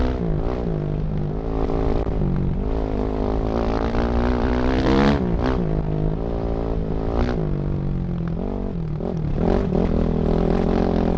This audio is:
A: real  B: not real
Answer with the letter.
A